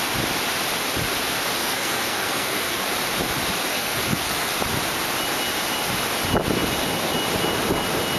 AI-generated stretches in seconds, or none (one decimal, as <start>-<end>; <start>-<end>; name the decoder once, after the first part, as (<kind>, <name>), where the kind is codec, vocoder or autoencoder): 1.6-2.8 (codec, SNAC); 3.7-4.5